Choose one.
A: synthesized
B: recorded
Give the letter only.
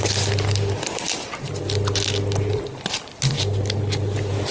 B